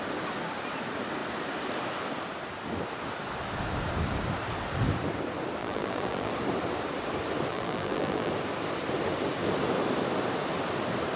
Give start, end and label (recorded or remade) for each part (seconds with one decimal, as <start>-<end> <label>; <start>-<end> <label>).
0.0-5.6 recorded; 5.6-6.3 remade; 6.3-7.5 recorded; 7.5-8.3 remade; 8.3-11.2 recorded